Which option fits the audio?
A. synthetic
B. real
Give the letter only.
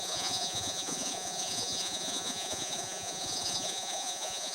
A